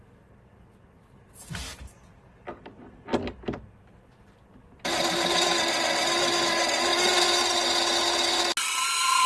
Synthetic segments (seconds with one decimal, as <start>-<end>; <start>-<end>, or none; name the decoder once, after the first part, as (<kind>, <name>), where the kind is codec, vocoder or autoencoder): none